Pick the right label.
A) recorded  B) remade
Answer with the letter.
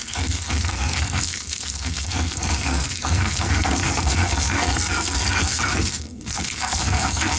B